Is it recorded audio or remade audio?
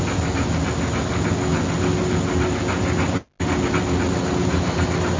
recorded